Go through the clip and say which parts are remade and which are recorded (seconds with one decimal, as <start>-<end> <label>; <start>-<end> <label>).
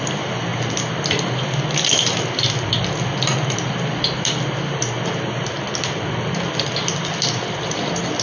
0.0-8.2 recorded